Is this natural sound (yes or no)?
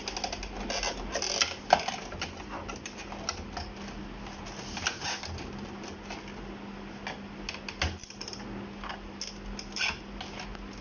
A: yes